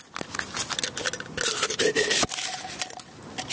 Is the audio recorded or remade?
recorded